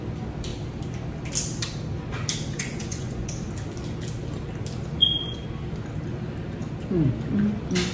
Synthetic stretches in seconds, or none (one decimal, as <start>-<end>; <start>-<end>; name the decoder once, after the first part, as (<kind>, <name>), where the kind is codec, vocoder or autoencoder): 2.5-3.3 (vocoder, Vocos)